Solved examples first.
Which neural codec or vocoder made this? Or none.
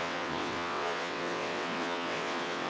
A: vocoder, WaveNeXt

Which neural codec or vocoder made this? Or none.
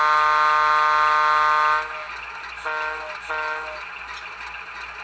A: none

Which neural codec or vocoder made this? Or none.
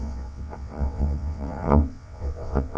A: vocoder, WaveNeXt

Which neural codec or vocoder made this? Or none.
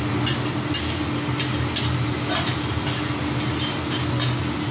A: none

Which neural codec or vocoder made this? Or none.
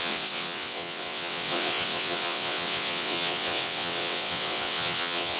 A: vocoder, WaveNeXt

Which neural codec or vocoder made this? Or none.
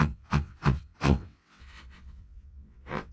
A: vocoder, WaveNeXt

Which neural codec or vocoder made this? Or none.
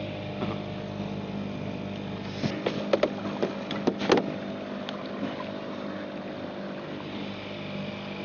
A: none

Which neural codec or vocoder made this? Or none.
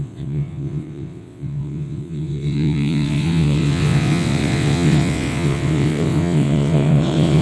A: vocoder, WaveNeXt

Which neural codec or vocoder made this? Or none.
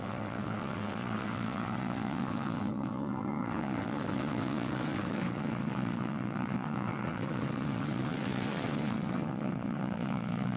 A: vocoder, WaveNeXt